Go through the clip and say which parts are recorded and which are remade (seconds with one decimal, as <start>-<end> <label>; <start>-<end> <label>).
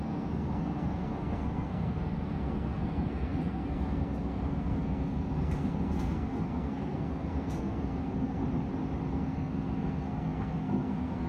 0.0-8.4 remade; 8.4-9.1 recorded; 9.1-11.3 remade